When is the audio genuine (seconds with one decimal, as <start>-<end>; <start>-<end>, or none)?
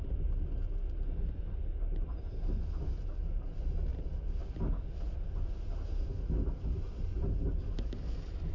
0.0-8.5